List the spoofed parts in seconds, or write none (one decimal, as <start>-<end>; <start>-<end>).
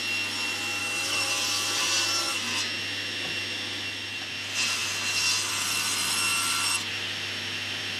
0.8-1.3